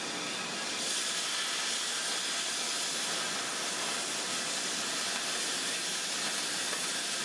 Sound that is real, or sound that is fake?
real